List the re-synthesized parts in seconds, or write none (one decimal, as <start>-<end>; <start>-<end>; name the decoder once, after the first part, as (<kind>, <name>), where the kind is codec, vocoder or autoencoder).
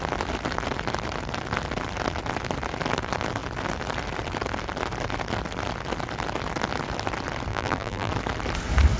7.5-8.1 (vocoder, BigVGAN v2)